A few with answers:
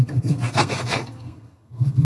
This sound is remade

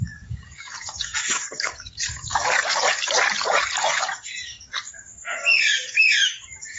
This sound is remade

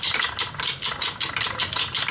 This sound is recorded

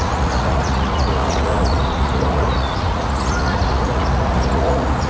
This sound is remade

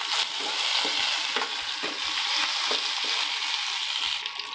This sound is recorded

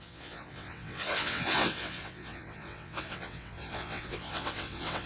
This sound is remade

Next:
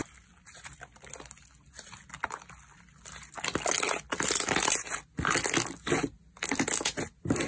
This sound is recorded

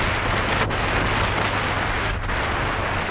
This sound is recorded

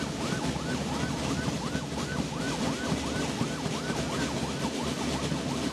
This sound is recorded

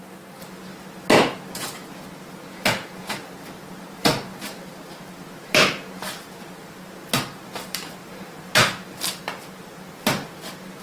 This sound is recorded